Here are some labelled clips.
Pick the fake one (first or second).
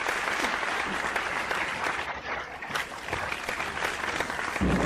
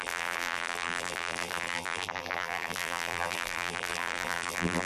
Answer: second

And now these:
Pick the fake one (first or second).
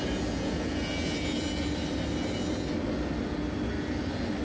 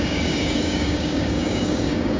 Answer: second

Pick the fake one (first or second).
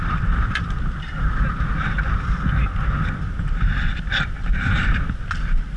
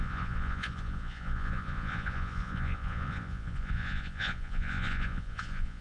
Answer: second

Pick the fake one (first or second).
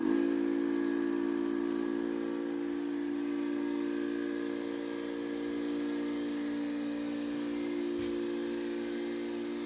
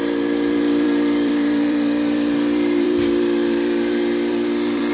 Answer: second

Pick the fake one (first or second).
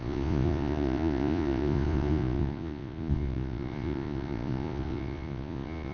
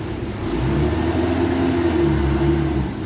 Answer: first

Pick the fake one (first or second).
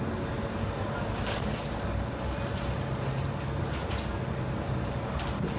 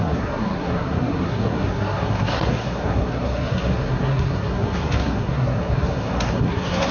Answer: second